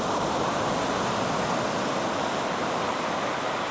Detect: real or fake real